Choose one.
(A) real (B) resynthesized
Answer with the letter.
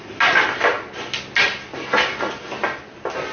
A